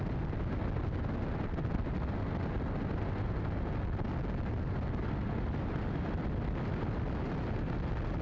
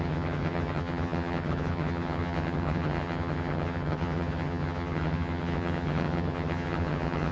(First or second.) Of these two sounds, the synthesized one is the second